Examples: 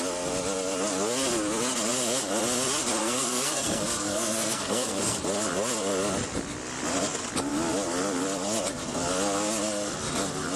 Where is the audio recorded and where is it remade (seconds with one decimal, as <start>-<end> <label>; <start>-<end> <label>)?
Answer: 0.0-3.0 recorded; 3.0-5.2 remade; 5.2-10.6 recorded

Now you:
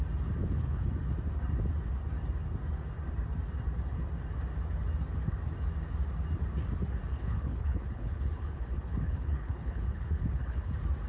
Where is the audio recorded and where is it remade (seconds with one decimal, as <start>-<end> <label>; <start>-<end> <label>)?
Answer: 0.0-0.4 recorded; 0.4-0.9 remade; 0.9-7.1 recorded; 7.1-10.7 remade; 10.7-11.1 recorded

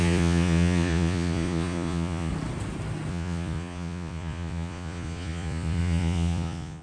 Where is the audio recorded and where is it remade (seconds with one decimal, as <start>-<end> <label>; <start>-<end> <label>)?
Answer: 0.0-2.3 remade; 2.3-3.1 recorded; 3.1-6.8 remade

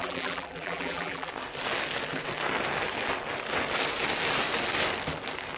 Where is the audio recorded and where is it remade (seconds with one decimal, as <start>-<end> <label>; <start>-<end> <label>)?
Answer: 0.0-1.3 remade; 1.3-5.6 recorded

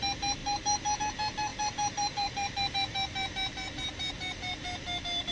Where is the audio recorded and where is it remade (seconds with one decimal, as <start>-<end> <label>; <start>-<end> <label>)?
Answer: 0.0-1.5 recorded; 1.5-2.7 remade; 2.7-5.3 recorded

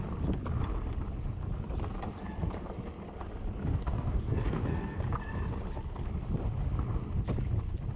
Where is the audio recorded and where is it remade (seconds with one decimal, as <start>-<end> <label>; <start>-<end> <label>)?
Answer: 0.0-3.7 recorded; 3.7-5.0 remade; 5.0-8.0 recorded

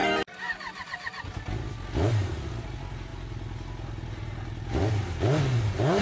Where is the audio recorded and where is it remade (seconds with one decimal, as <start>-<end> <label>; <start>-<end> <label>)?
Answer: 0.0-1.2 remade; 1.2-6.0 recorded